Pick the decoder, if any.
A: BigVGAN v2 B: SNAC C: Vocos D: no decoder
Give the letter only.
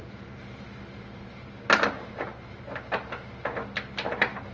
D